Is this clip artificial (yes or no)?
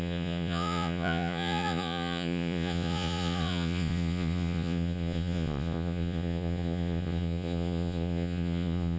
yes